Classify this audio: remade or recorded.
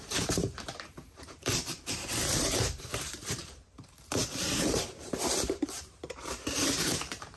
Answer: remade